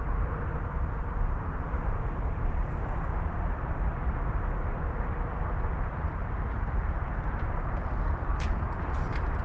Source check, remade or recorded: remade